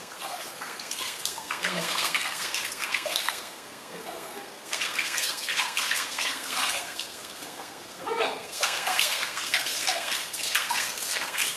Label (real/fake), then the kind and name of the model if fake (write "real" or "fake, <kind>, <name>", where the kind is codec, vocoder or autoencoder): fake, codec, SNAC